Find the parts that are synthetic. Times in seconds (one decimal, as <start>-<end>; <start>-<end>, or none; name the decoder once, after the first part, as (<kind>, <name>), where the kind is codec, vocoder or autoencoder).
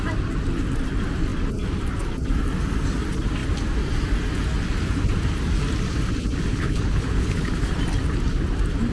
6.5-7.4 (codec, HILCodec)